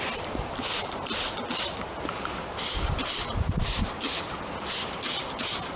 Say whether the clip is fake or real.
real